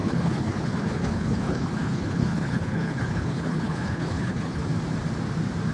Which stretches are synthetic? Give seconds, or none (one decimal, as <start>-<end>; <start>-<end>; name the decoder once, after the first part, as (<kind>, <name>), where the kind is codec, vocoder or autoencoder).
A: 0.0-4.6 (codec, HILCodec)